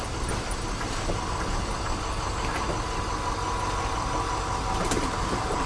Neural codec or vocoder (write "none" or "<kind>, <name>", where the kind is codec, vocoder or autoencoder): none